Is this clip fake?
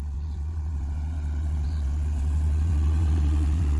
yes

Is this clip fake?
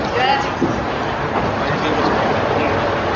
no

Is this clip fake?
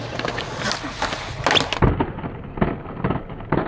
no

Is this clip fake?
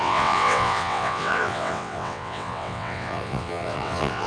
yes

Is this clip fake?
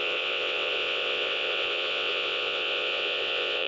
yes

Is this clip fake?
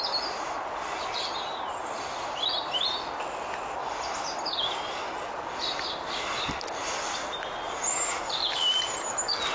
no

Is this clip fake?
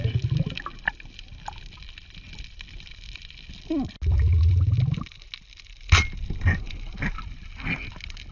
no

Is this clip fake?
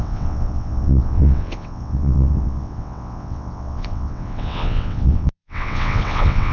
yes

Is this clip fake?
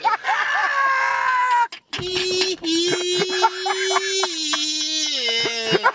no